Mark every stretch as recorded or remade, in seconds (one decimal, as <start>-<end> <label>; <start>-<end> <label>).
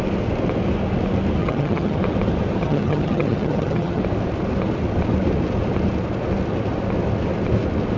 0.0-1.4 recorded; 1.4-2.0 remade; 2.0-2.6 recorded; 2.6-4.0 remade; 4.0-8.0 recorded